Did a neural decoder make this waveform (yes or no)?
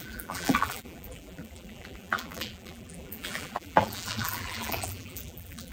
yes